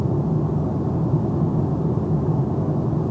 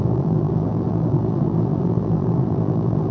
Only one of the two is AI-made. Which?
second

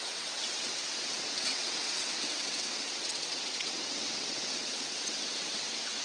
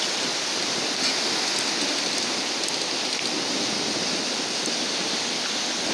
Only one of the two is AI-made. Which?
first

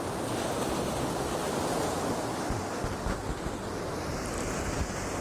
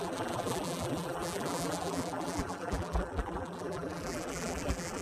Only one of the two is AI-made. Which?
second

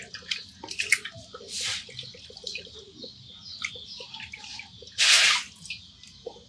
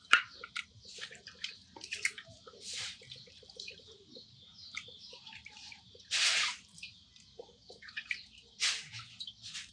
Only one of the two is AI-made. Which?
second